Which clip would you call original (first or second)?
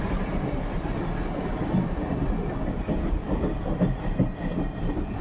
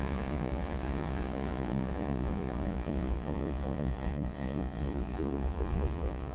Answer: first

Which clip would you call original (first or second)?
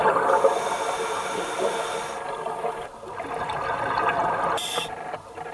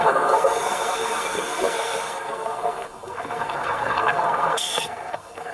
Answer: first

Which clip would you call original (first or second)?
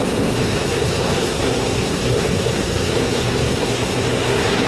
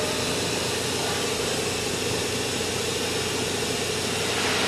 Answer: second